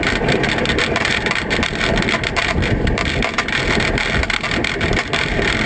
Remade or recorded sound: remade